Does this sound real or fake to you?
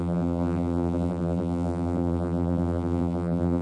fake